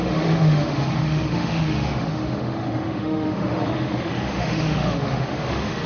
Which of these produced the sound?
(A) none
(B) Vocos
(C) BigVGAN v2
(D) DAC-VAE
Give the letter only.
D